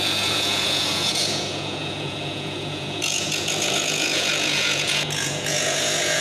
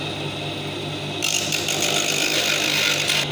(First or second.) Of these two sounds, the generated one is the first